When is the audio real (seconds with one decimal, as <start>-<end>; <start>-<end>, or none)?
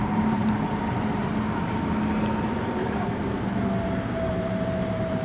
1.2-4.3